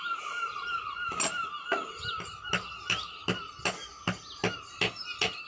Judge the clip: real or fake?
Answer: real